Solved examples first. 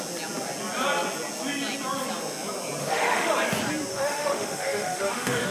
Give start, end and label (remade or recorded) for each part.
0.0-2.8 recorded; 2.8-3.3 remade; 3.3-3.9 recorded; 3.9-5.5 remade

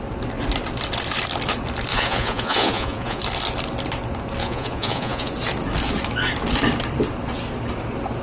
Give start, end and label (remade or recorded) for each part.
0.0-1.9 recorded; 1.9-3.2 remade; 3.2-4.4 recorded; 4.4-5.3 remade; 5.3-8.2 recorded

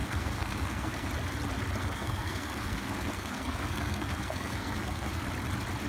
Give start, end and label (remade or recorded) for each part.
0.0-1.1 remade; 1.1-1.8 recorded; 1.8-5.3 remade; 5.3-5.9 recorded

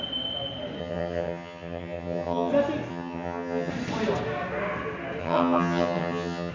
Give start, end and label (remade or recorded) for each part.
0.0-0.8 recorded; 0.8-2.5 remade; 2.5-2.9 recorded; 2.9-3.7 remade; 3.7-5.2 recorded; 5.2-6.5 remade

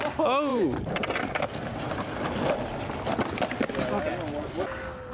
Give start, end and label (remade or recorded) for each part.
0.0-0.5 recorded; 0.5-2.2 remade; 2.2-5.1 recorded

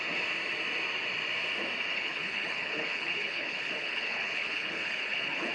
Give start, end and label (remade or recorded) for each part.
0.0-1.9 recorded; 1.9-5.5 remade

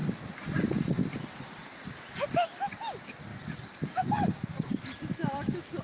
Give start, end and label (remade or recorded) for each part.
0.0-5.8 recorded